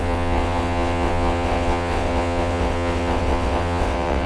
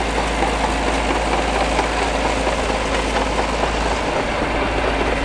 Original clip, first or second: second